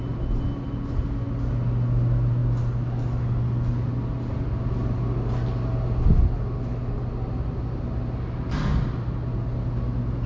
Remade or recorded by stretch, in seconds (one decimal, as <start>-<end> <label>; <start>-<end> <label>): 0.0-10.3 recorded